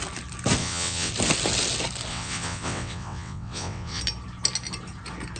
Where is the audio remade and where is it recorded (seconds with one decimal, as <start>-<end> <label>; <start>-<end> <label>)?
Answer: 0.0-0.6 recorded; 0.6-1.1 remade; 1.1-2.1 recorded; 2.1-4.0 remade; 4.0-5.4 recorded